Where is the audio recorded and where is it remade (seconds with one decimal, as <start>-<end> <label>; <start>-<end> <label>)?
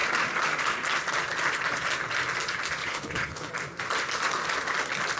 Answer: 0.0-2.8 recorded; 2.8-3.5 remade; 3.5-5.2 recorded